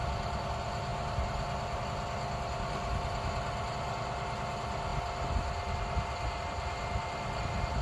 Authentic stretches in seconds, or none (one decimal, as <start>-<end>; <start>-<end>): 0.0-7.8